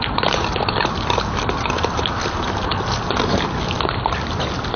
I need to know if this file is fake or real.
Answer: real